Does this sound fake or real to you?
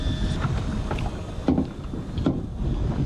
real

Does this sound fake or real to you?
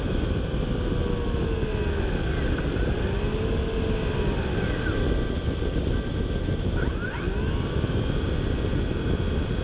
real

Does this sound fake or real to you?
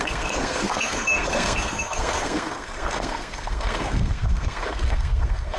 fake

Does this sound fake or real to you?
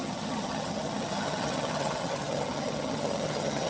fake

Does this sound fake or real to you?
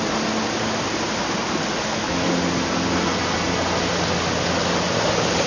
real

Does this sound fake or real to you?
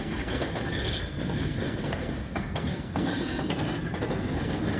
fake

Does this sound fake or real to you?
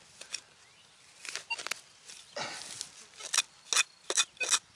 real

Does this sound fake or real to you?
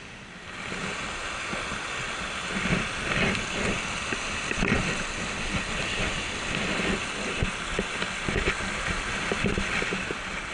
real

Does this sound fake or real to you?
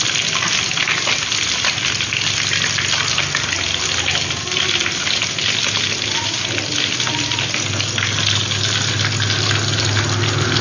real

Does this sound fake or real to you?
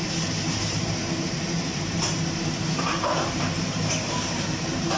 fake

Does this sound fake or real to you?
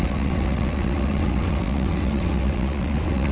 fake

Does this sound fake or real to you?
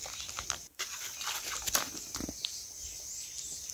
real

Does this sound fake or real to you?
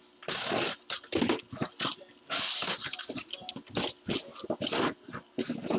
real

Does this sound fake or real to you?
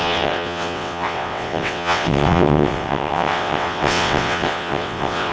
fake